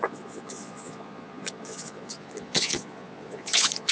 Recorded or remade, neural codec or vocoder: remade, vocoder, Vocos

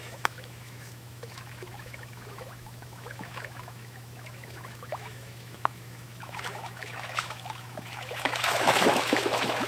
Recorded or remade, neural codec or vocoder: remade, autoencoder, DAC-VAE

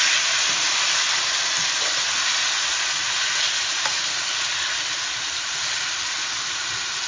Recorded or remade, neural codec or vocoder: recorded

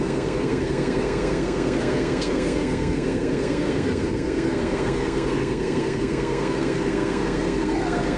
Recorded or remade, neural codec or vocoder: remade, codec, SNAC